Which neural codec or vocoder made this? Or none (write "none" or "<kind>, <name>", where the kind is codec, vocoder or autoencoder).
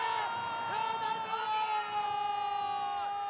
none